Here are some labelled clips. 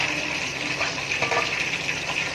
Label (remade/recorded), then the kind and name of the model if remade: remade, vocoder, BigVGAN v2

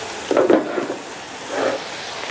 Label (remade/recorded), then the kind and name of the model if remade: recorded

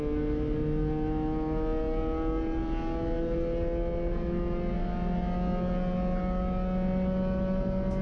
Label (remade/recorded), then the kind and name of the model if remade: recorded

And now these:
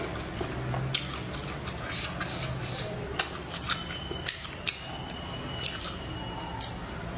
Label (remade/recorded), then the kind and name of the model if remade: recorded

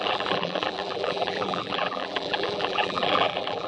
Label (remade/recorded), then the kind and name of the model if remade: remade, vocoder, BigVGAN v2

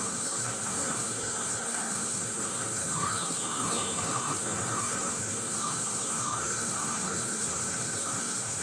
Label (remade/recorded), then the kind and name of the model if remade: remade, codec, SNAC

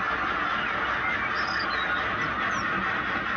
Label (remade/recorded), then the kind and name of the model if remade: recorded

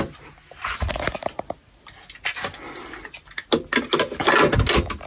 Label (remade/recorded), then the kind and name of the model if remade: recorded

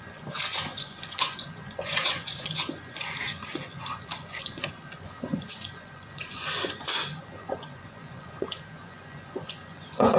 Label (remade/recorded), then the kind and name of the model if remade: remade, vocoder, Vocos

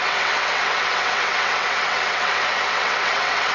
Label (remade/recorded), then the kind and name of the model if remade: remade, vocoder, WaveNeXt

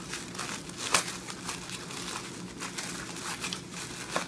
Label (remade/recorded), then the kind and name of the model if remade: recorded